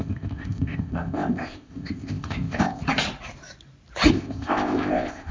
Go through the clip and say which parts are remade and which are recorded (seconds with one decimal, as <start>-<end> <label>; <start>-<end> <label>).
0.0-2.8 remade; 2.8-4.1 recorded; 4.1-5.3 remade